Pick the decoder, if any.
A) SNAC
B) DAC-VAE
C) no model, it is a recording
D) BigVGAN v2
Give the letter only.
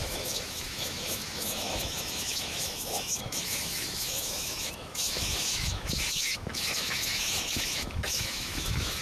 B